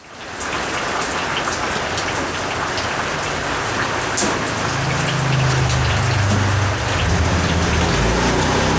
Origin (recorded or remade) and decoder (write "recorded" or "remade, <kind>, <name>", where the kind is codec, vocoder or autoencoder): recorded